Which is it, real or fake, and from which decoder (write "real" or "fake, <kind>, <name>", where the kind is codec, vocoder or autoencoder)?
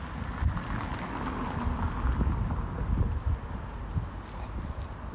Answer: real